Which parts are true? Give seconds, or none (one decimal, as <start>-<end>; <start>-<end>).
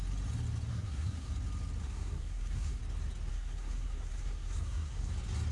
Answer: 0.0-0.7; 1.3-1.8; 2.8-3.3; 5.1-5.5